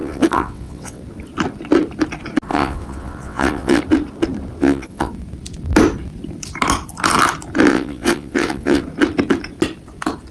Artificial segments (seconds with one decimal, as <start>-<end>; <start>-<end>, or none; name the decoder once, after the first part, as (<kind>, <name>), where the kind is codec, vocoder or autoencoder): 0.0-1.0 (vocoder, WaveNeXt); 2.5-3.8; 4.6-5.1; 7.7-8.8